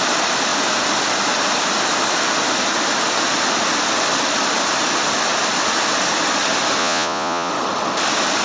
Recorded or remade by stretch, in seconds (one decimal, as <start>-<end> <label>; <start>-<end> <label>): 0.0-6.8 recorded; 6.8-7.5 remade; 7.5-8.4 recorded

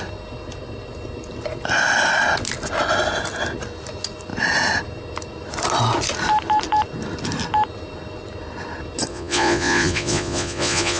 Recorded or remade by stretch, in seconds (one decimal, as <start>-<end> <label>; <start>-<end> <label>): 0.0-9.1 recorded; 9.1-11.0 remade

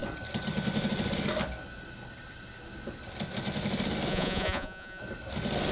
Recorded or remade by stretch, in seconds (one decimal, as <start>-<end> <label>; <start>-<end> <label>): 0.0-4.1 recorded; 4.1-5.0 remade; 5.0-5.7 recorded

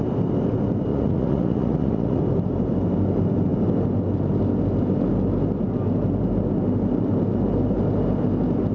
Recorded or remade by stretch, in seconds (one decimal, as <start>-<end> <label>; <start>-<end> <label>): 0.0-0.9 recorded; 0.9-2.2 remade; 2.2-8.7 recorded

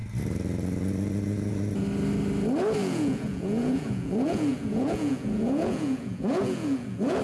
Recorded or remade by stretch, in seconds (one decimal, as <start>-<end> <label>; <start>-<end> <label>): 0.0-2.8 recorded; 2.8-7.2 remade